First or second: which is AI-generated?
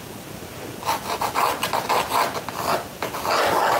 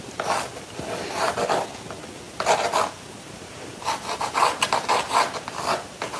second